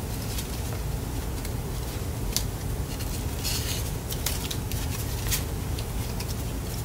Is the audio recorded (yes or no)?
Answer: yes